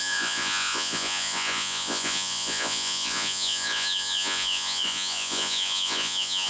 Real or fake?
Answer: fake